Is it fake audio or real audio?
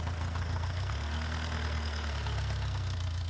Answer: fake